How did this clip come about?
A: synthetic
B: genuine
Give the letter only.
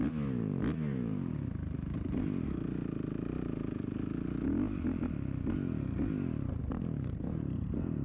B